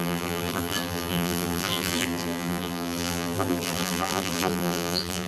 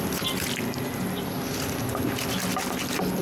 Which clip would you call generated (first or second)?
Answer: first